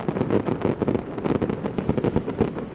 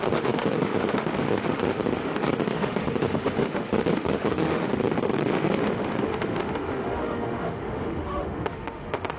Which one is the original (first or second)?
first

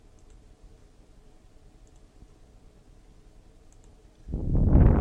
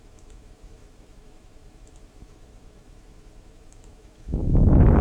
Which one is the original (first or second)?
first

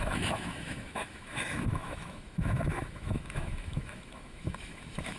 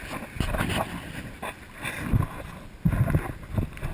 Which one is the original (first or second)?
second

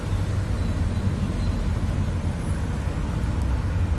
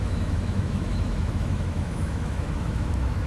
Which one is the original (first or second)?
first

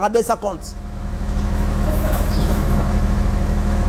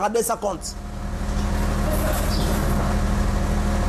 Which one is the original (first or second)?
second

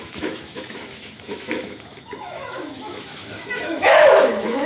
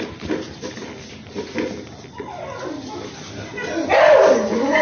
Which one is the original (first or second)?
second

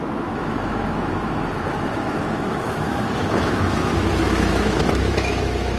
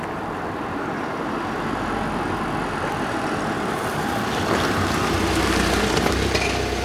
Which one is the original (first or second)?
second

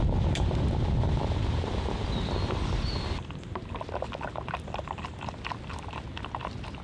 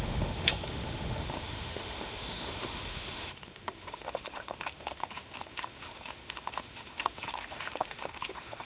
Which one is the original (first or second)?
first